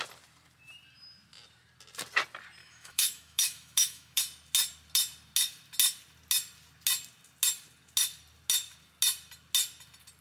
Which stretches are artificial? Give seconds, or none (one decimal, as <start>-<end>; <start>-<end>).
2.6-4.2